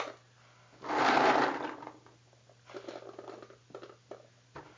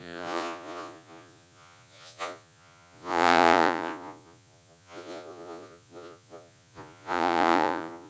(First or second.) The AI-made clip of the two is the second